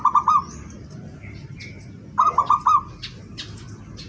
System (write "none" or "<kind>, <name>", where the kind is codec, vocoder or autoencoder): none